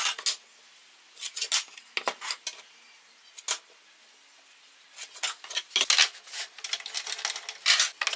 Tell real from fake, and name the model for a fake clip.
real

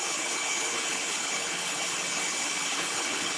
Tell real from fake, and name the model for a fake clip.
fake, codec, HILCodec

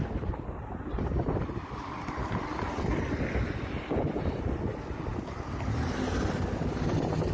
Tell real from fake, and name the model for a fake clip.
real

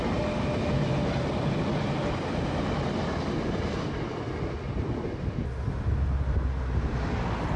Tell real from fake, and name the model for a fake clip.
real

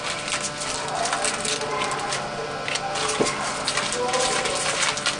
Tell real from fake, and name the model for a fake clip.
real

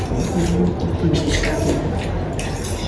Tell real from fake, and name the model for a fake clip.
real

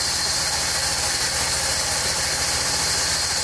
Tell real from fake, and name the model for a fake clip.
real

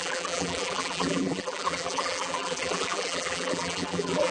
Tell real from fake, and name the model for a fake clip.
fake, vocoder, BigVGAN v2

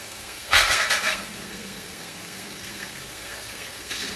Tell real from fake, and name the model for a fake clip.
fake, codec, SNAC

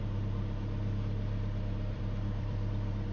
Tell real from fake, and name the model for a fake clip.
fake, vocoder, BigVGAN v2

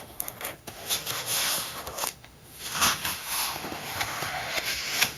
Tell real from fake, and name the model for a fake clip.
fake, autoencoder, DAC-VAE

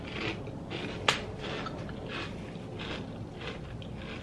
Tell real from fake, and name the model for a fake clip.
real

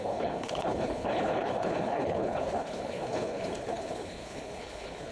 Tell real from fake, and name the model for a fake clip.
fake, codec, HILCodec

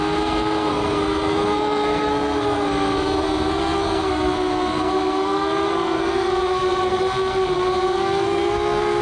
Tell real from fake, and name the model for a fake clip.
fake, codec, SNAC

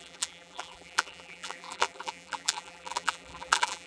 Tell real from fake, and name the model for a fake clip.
fake, vocoder, BigVGAN v2